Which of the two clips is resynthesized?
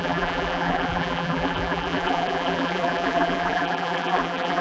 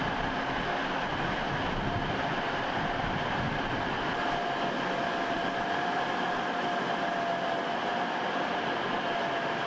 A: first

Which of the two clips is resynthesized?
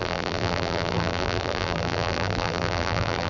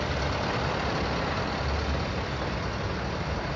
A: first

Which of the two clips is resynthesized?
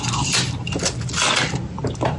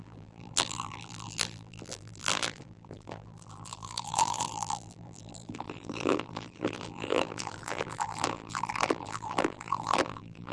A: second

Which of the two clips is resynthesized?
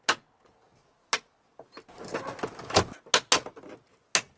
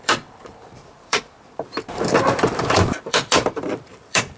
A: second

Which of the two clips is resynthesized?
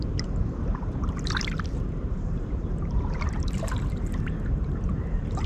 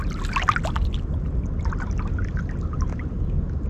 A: first